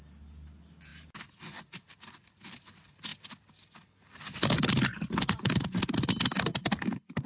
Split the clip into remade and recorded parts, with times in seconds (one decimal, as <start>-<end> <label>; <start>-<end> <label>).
0.0-7.3 recorded